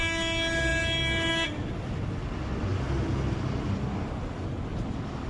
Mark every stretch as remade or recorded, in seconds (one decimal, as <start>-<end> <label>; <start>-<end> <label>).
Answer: 0.0-5.3 recorded

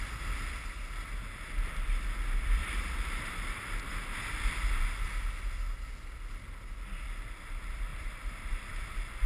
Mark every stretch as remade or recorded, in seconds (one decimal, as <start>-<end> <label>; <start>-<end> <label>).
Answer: 0.0-2.6 recorded; 2.6-3.7 remade; 3.7-7.9 recorded; 7.9-8.8 remade; 8.8-9.3 recorded

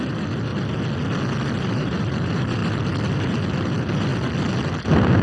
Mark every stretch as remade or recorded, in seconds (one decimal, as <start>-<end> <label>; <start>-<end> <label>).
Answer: 0.0-0.5 remade; 0.5-1.7 recorded; 1.7-2.6 remade; 2.6-3.1 recorded; 3.1-4.1 remade; 4.1-4.7 recorded; 4.7-5.2 remade

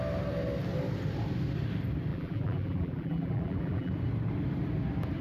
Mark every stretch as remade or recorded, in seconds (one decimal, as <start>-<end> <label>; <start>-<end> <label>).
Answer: 0.0-2.1 recorded; 2.1-3.9 remade; 3.9-5.2 recorded

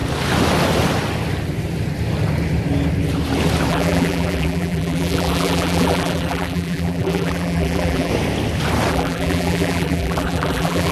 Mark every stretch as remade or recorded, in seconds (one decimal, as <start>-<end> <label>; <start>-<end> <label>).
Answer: 0.0-3.7 recorded; 3.7-8.1 remade; 8.1-8.9 recorded; 8.9-10.9 remade